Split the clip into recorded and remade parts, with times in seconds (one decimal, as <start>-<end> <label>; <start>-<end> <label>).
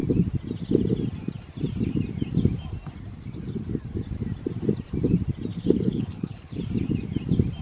0.0-5.5 recorded; 5.5-6.6 remade; 6.6-7.6 recorded